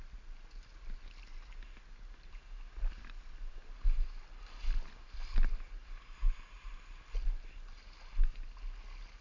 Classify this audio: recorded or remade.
recorded